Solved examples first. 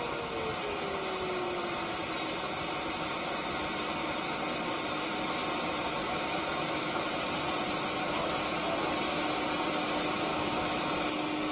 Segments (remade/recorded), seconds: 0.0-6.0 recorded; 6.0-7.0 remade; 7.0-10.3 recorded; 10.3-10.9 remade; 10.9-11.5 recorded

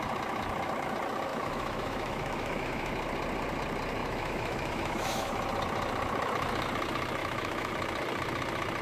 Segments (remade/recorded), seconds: 0.0-1.3 recorded; 1.3-2.9 remade; 2.9-4.0 recorded; 4.0-5.3 remade; 5.3-7.2 recorded; 7.2-7.7 remade; 7.7-8.8 recorded

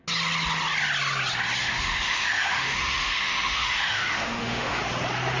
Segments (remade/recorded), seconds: 0.0-1.6 recorded; 1.6-4.8 remade; 4.8-5.4 recorded

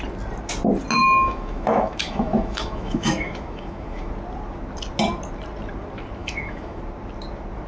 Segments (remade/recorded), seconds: 0.0-1.0 recorded; 1.0-4.1 remade; 4.1-6.2 recorded; 6.2-6.8 remade; 6.8-7.7 recorded